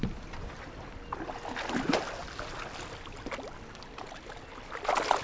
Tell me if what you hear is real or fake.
real